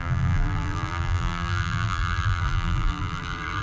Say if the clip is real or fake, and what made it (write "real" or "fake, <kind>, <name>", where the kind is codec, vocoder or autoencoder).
fake, vocoder, BigVGAN v2